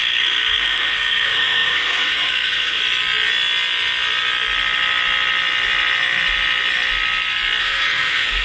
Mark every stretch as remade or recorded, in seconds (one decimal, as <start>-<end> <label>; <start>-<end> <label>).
0.0-2.8 remade; 2.8-7.6 recorded; 7.6-8.4 remade